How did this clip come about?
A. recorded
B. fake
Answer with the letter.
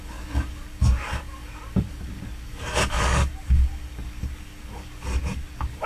B